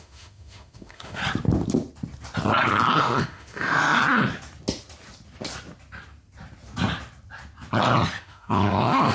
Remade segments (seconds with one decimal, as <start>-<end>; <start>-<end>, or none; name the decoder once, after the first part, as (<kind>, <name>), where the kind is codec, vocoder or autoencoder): 0.0-1.2 (autoencoder, DAC-VAE); 3.0-4.0; 8.2-9.1